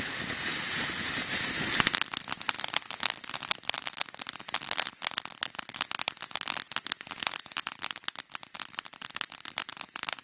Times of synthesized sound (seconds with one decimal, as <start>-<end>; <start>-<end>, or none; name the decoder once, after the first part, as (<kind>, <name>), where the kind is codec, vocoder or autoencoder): none